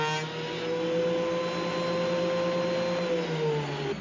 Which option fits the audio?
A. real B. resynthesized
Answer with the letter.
A